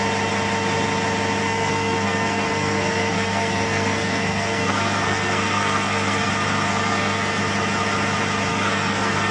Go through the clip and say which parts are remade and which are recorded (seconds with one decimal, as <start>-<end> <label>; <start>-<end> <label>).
0.0-1.4 recorded; 1.4-6.3 remade; 6.3-6.7 recorded; 6.7-7.4 remade; 7.4-8.5 recorded; 8.5-9.3 remade